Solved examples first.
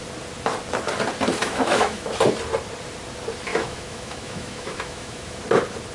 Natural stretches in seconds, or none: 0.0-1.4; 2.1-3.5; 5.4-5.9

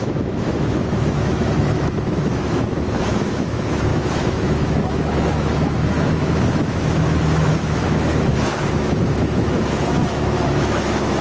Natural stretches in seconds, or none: none

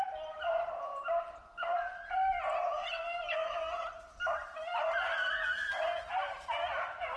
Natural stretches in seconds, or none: 0.0-7.2

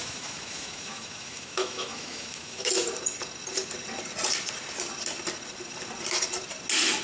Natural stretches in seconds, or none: 2.7-7.0

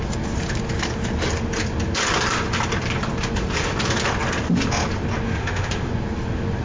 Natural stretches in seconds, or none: 0.0-5.4; 5.9-6.6

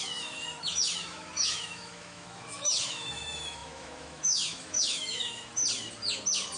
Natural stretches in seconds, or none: 5.6-6.6

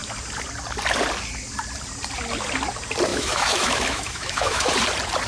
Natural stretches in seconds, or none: 0.0-3.1; 4.7-5.3